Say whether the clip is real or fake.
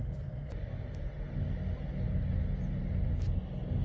real